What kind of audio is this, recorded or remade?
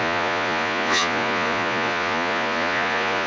remade